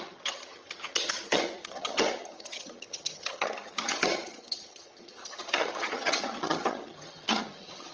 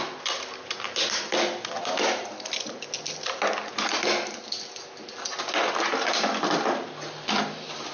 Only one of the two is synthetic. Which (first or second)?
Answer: first